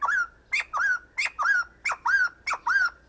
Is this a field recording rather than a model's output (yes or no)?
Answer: yes